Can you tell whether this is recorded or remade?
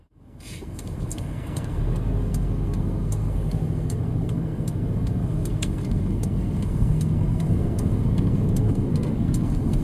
remade